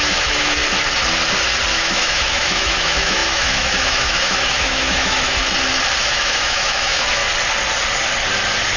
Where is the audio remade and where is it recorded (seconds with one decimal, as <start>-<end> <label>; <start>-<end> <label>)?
0.0-0.6 remade; 0.6-1.7 recorded; 1.7-5.4 remade; 5.4-6.0 recorded; 6.0-7.2 remade; 7.2-8.8 recorded